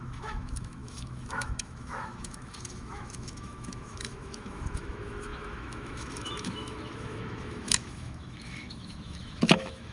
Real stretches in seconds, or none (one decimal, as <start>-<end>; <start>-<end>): none